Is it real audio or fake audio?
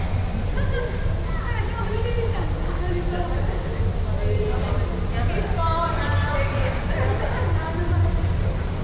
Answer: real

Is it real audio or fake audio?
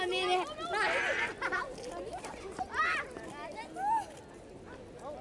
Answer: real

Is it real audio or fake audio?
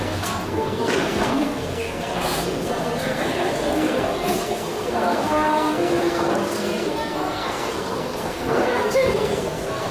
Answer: fake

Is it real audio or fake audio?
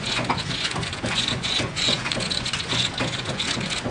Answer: fake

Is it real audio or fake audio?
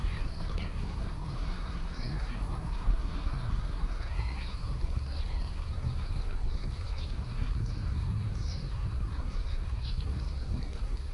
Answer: fake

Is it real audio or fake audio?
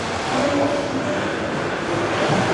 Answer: real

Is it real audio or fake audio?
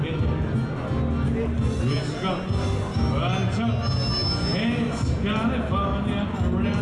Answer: real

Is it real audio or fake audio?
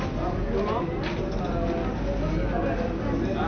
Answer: real